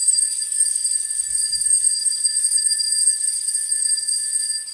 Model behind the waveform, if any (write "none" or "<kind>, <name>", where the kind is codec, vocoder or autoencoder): codec, DAC